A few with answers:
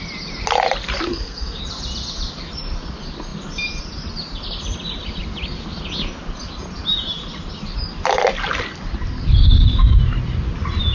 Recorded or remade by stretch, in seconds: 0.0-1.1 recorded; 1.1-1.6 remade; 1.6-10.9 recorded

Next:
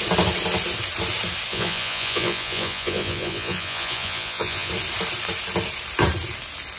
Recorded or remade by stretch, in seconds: 0.0-1.5 recorded; 1.5-4.7 remade; 4.7-6.8 recorded

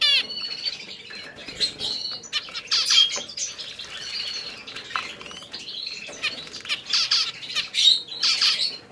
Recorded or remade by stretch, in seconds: 0.0-8.9 recorded

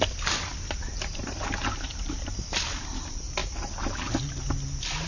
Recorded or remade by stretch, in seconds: 0.0-5.1 recorded

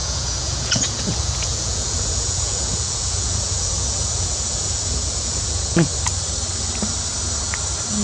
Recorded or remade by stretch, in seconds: 0.0-5.9 remade; 5.9-8.0 recorded

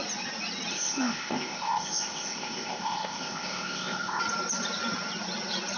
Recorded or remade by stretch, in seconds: 0.0-0.7 recorded; 0.7-4.2 remade; 4.2-5.8 recorded

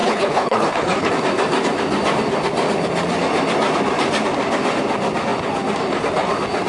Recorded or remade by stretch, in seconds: 0.0-1.1 remade; 1.1-6.7 recorded